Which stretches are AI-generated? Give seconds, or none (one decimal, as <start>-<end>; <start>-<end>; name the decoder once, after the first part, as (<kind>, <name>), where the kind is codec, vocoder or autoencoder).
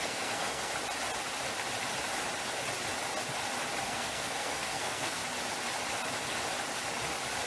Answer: 0.0-0.7 (codec, SNAC); 3.8-5.2